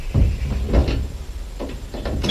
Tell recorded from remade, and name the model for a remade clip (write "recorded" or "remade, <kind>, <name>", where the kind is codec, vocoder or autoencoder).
recorded